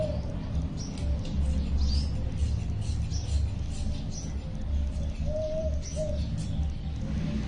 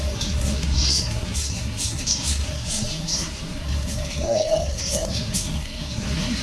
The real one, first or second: first